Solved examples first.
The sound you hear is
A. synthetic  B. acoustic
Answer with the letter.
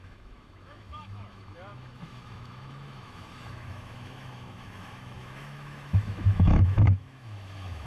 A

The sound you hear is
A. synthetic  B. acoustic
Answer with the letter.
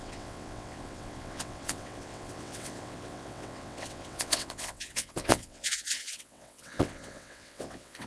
A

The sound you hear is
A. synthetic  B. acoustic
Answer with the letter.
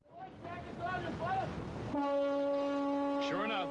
B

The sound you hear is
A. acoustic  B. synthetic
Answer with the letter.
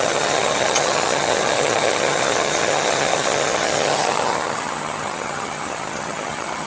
B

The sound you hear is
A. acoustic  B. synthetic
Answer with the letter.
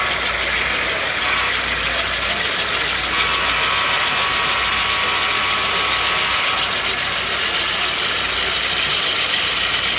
A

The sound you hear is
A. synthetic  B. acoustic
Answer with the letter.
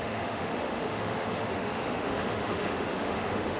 A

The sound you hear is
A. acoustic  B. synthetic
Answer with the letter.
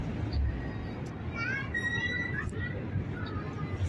A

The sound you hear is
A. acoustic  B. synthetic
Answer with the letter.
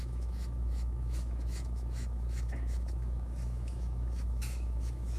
B